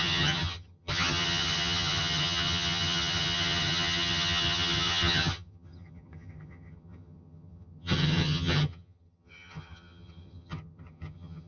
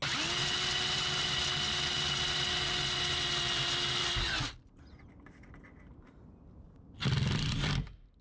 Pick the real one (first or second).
second